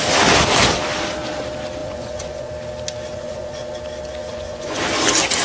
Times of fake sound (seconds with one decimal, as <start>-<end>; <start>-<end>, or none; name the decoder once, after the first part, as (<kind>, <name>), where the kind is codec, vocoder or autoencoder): 1.8-2.5 (vocoder, Vocos); 3.1-3.7; 4.3-4.8